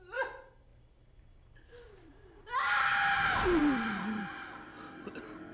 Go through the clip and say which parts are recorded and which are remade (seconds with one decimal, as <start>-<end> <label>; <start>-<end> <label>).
0.0-0.7 recorded; 0.7-2.7 remade; 2.7-5.5 recorded